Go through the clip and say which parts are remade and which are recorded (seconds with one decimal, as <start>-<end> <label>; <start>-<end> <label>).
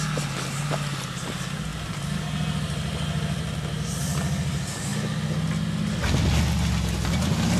0.0-7.6 recorded